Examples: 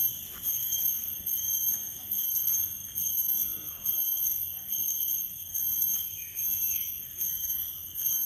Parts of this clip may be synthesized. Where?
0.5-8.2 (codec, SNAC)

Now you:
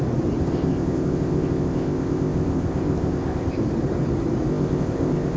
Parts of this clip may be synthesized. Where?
0.4-3.6 (codec, ZipCodec); 4.5-5.4

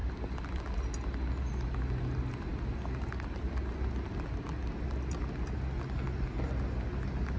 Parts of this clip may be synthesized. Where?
none

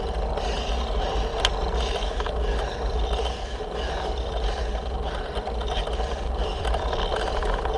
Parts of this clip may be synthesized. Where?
6.4-7.8 (vocoder, BigVGAN v2)

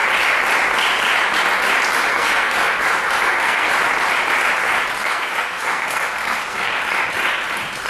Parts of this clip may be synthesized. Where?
2.1-3.7 (codec, SNAC); 5.0-6.8

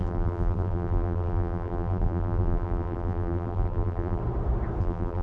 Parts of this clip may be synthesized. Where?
0.0-4.2 (vocoder, BigVGAN v2); 4.8-5.2

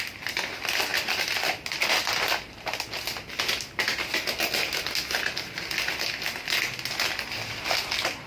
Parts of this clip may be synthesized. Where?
none